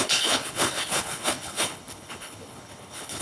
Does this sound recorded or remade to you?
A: remade